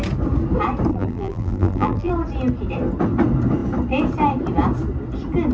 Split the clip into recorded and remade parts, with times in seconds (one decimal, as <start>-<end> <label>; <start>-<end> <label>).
0.0-0.9 recorded; 0.9-2.1 remade; 2.1-5.5 recorded